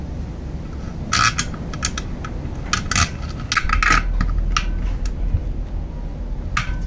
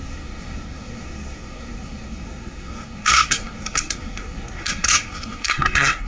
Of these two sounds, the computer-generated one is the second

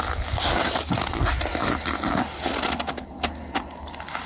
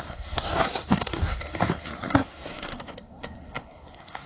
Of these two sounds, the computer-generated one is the second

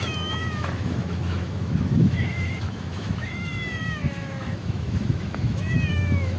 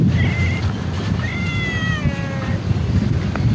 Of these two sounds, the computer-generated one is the first